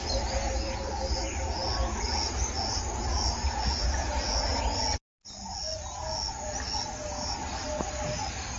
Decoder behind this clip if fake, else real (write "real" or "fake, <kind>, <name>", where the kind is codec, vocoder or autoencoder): real